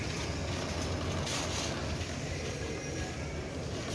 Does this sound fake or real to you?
real